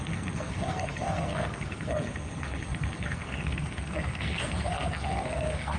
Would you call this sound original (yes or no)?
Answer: no